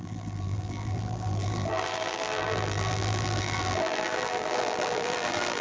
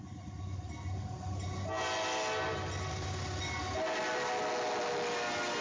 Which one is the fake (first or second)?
first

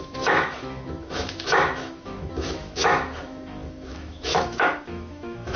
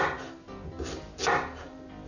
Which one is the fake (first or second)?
first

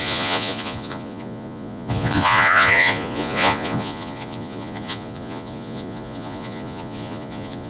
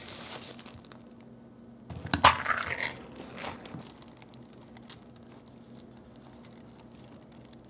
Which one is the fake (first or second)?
first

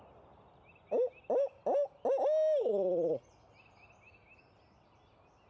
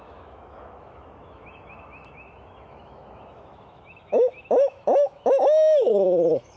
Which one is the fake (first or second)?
second